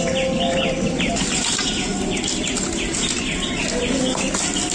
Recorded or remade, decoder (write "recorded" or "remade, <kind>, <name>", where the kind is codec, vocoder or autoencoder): recorded